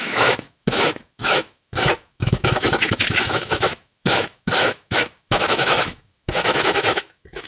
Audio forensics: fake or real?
fake